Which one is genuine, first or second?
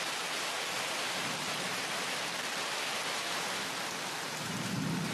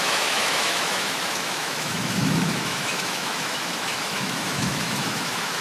first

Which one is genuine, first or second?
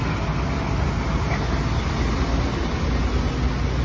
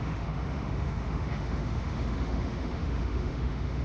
first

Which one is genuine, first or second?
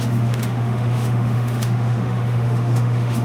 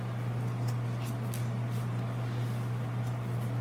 second